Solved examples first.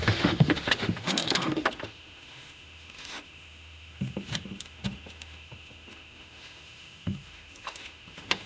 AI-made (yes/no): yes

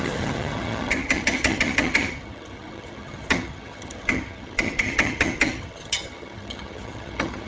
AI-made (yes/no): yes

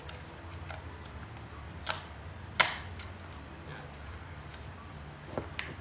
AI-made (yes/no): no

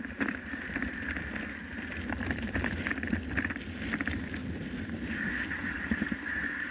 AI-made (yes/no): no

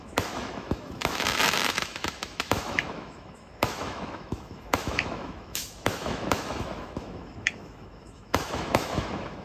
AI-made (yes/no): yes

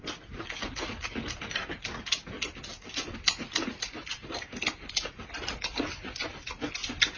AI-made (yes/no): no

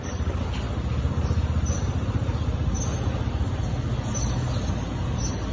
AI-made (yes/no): no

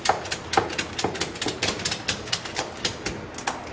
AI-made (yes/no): no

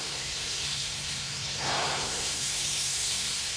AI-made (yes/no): yes